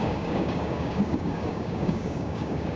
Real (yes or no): no